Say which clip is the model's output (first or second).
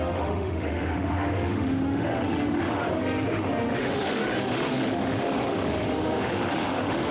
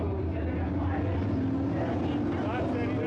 first